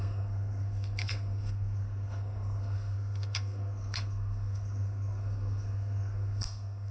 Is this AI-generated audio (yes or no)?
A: yes